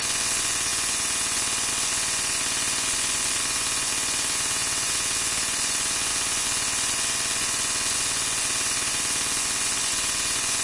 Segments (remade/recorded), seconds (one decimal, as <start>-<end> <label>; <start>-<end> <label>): 0.0-10.6 remade